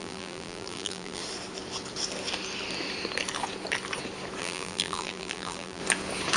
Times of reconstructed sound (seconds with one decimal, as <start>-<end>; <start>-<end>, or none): 0.0-1.2; 4.4-5.8